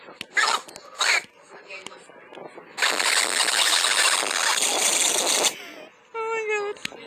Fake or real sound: real